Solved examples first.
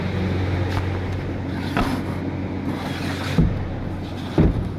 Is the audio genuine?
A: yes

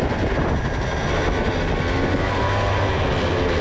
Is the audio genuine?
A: yes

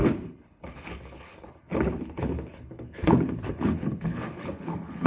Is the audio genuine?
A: no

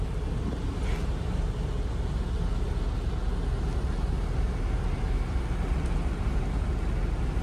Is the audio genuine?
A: yes